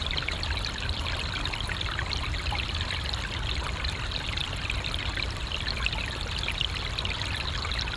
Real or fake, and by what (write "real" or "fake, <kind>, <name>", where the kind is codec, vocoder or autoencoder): real